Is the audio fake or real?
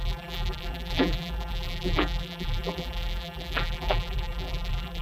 fake